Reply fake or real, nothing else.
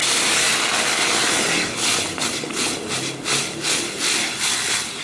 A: real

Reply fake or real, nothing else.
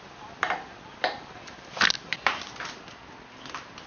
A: real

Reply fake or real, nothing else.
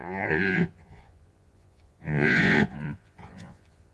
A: fake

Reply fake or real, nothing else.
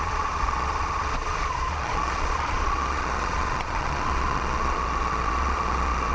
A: fake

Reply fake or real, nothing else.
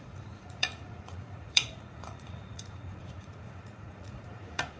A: fake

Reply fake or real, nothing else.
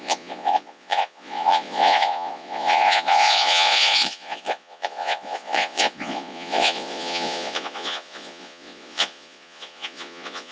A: fake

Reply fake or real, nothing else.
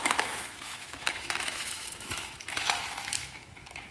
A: fake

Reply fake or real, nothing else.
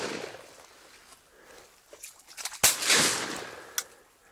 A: real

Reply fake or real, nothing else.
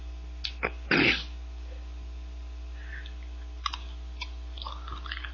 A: real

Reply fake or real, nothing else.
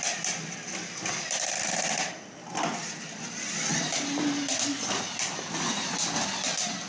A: real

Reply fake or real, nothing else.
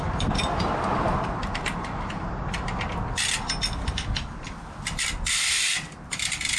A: real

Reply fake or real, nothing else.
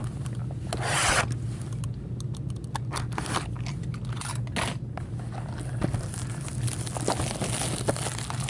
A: real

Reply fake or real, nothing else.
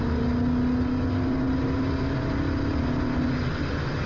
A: real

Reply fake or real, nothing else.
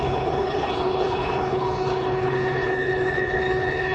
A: fake